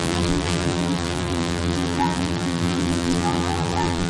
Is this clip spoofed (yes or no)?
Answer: yes